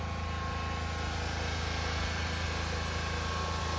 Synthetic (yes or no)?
no